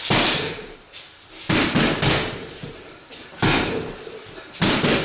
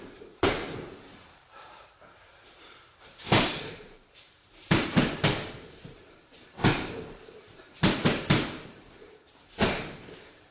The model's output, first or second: second